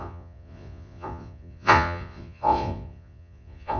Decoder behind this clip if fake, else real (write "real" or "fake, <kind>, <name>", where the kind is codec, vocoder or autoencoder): fake, vocoder, Vocos